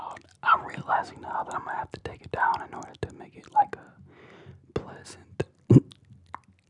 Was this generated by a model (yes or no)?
no